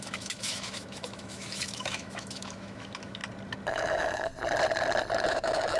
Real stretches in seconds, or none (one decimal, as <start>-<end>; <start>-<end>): 3.2-3.7; 4.3-5.3